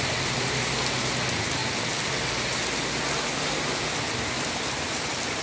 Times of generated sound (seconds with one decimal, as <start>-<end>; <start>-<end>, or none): none